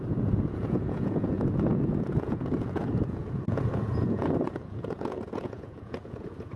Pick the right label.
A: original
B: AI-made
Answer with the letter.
B